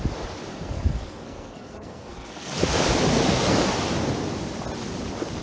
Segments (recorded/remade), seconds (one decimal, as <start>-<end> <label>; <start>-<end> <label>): 0.0-0.5 recorded; 0.5-2.5 remade; 2.5-3.1 recorded; 3.1-3.7 remade; 3.7-5.4 recorded